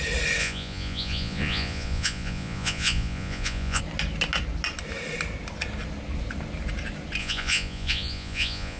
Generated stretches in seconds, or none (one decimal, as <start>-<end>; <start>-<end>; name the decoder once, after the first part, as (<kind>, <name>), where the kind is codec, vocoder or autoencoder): 0.4-3.8 (vocoder, Vocos); 7.2-8.8